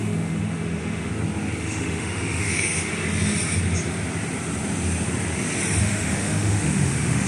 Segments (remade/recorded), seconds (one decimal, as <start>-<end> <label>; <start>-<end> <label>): 0.0-1.1 remade; 1.1-1.6 recorded; 1.6-2.9 remade; 2.9-5.8 recorded; 5.8-7.3 remade